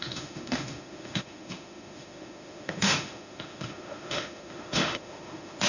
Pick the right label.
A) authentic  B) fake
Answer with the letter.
B